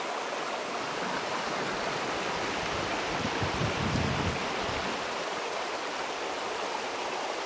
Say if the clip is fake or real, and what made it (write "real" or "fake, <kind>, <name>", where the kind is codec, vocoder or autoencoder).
real